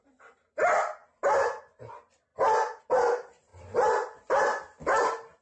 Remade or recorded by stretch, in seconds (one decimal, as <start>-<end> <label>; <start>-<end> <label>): 0.0-5.4 recorded